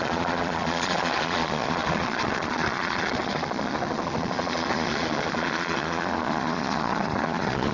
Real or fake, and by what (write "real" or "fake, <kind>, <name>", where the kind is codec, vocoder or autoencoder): fake, vocoder, Vocos